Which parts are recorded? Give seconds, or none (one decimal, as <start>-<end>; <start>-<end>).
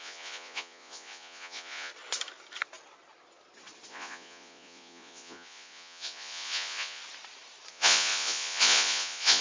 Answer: 1.9-3.9; 7.0-7.7